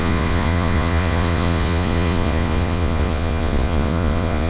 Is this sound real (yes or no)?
no